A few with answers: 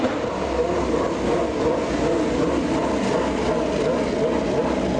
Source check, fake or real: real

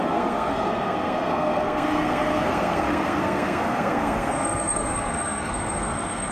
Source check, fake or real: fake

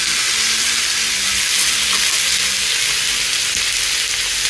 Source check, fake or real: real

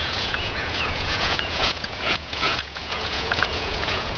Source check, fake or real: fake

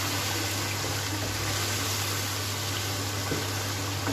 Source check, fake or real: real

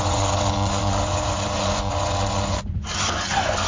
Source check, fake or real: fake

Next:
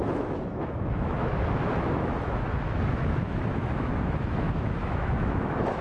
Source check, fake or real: fake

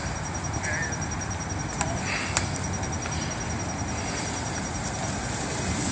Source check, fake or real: real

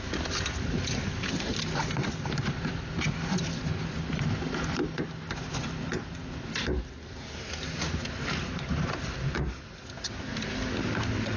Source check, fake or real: real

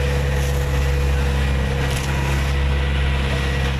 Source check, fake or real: real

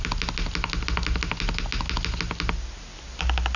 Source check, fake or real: real